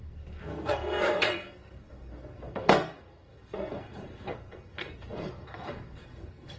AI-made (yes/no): yes